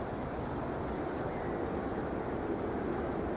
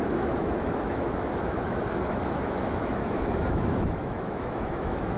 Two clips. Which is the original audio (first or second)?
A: first